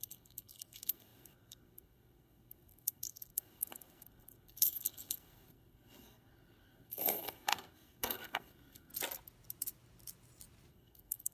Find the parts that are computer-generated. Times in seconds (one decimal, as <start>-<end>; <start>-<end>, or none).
0.0-8.9; 10.7-11.3